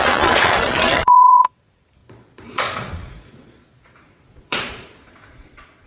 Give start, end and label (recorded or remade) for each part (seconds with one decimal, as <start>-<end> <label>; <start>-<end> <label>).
0.0-5.9 remade